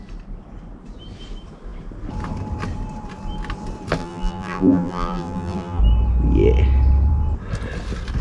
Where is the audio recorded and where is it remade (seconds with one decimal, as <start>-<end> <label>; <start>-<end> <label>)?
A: 0.0-4.0 recorded; 4.0-5.8 remade; 5.8-8.2 recorded